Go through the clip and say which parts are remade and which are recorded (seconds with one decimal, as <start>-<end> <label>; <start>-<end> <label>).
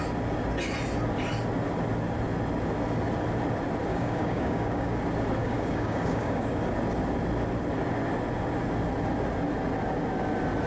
0.0-3.9 recorded; 3.9-5.0 remade; 5.0-5.4 recorded; 5.4-6.6 remade; 6.6-10.7 recorded